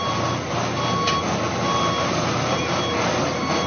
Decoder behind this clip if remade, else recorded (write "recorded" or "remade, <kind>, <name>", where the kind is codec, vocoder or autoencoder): recorded